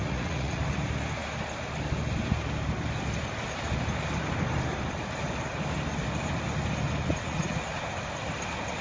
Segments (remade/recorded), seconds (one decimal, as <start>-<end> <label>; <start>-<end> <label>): 0.0-0.6 remade; 0.6-7.0 recorded; 7.0-7.6 remade; 7.6-8.8 recorded